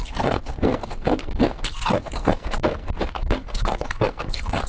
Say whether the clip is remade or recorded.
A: remade